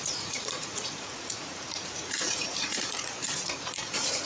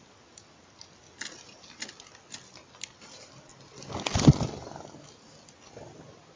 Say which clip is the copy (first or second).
first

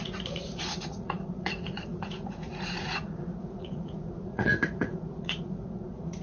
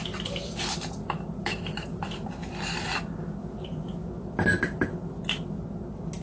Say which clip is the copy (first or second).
first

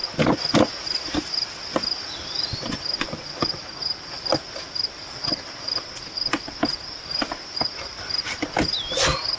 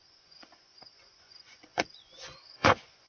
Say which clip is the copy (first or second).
second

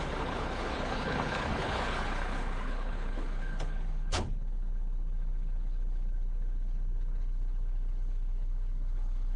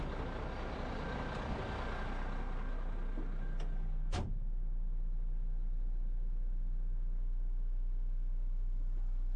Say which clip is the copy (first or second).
first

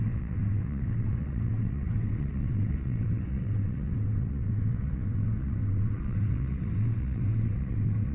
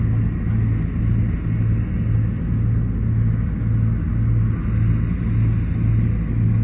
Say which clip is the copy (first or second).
first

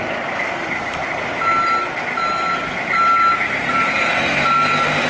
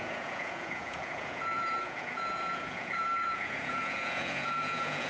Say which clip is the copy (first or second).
second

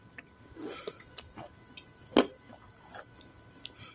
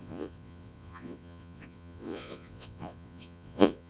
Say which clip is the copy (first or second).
second